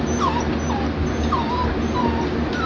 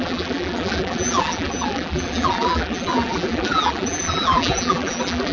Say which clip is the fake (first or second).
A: second